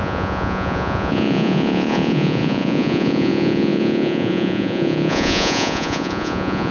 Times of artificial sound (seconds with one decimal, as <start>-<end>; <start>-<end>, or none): 0.0-6.7